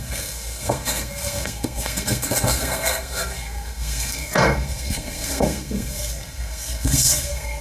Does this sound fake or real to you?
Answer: fake